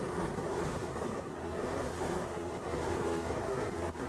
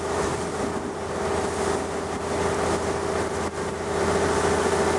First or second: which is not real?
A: first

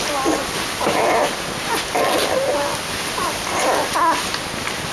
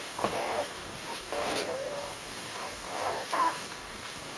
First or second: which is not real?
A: second